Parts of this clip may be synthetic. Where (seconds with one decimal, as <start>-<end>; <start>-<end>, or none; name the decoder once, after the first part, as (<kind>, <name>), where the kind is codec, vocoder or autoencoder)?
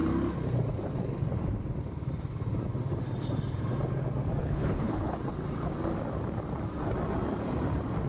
4.4-5.2 (codec, HILCodec)